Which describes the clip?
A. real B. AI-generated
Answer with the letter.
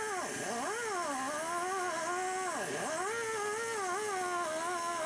A